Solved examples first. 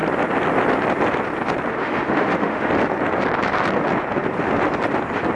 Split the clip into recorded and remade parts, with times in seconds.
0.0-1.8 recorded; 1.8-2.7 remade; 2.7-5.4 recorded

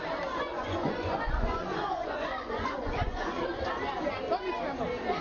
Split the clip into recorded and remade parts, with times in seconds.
0.0-0.5 recorded; 0.5-3.6 remade; 3.6-5.2 recorded

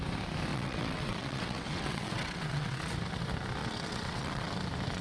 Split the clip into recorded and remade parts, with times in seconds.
0.0-0.5 recorded; 0.5-2.8 remade; 2.8-3.6 recorded; 3.6-4.5 remade; 4.5-5.0 recorded

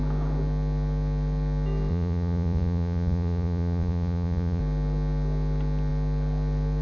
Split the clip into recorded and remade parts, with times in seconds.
0.0-1.9 recorded; 1.9-4.6 remade; 4.6-6.8 recorded

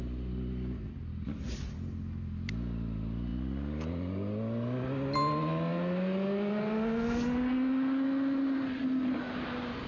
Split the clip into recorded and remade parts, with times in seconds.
0.0-9.9 recorded

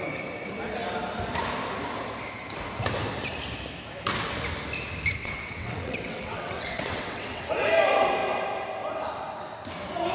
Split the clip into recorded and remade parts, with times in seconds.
0.0-5.2 recorded; 5.2-7.5 remade; 7.5-10.1 recorded

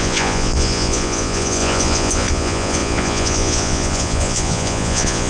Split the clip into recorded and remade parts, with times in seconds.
0.0-5.3 remade